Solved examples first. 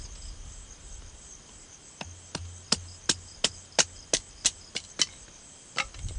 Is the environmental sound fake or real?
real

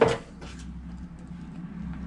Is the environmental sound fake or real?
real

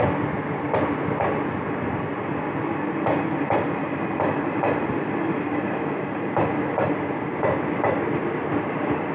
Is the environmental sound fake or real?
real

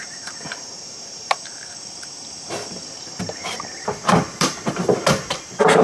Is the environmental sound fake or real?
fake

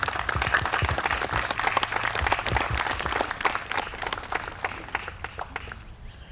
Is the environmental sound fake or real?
real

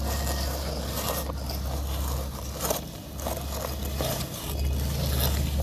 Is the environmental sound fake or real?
real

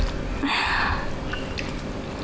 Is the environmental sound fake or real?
real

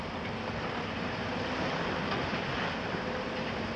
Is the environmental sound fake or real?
real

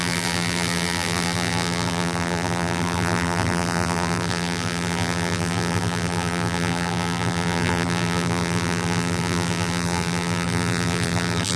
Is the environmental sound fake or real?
fake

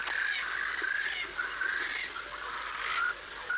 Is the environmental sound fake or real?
real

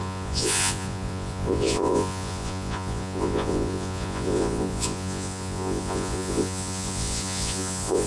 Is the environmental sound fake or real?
fake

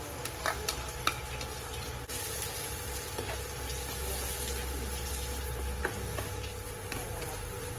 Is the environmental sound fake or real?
real